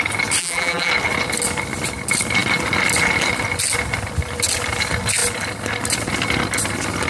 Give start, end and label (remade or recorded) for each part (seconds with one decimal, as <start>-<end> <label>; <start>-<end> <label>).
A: 0.0-0.4 recorded; 0.4-0.9 remade; 0.9-7.1 recorded